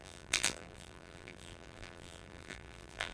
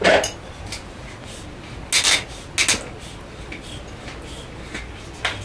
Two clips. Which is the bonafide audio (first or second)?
second